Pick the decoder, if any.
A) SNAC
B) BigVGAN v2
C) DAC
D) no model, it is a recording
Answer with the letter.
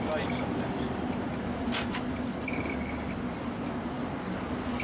D